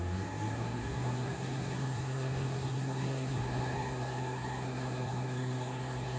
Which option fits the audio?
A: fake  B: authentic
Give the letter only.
A